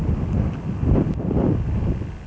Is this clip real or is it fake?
real